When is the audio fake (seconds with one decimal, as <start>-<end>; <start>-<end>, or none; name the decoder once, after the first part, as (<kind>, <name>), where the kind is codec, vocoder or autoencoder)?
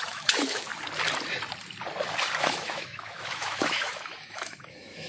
0.0-0.7 (autoencoder, DAC-VAE); 2.4-5.1